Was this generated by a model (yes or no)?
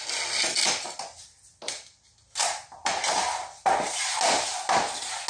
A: no